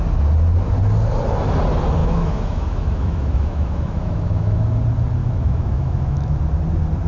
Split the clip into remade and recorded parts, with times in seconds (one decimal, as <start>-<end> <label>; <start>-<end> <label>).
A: 0.0-2.0 recorded; 2.0-4.6 remade; 4.6-5.2 recorded; 5.2-6.4 remade; 6.4-7.1 recorded